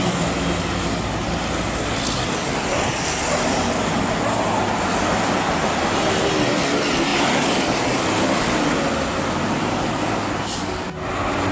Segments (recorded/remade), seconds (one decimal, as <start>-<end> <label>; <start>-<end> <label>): 0.0-11.5 recorded